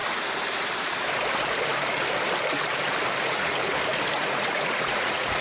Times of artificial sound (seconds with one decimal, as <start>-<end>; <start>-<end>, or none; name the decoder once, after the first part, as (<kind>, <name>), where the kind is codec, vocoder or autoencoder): 3.2-3.6 (vocoder, Vocos); 4.1-5.4